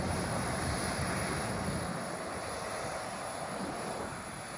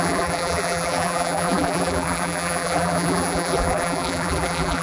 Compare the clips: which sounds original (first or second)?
first